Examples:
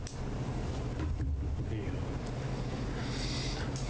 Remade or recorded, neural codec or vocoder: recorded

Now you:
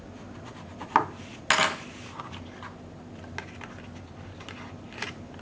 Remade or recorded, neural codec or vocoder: recorded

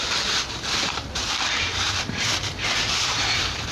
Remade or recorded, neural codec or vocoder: remade, vocoder, BigVGAN v2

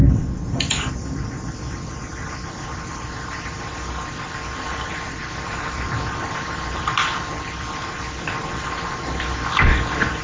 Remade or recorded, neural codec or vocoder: remade, vocoder, BigVGAN v2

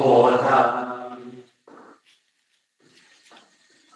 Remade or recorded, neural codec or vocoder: recorded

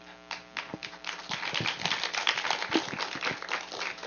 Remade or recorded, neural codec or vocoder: recorded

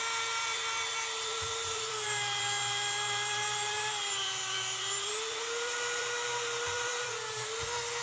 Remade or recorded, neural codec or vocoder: remade, vocoder, BigVGAN v2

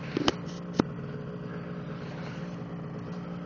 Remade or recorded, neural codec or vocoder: recorded